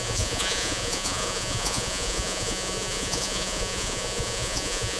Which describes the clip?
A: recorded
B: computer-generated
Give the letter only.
B